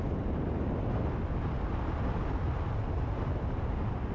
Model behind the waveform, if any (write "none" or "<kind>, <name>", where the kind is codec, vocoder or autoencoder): none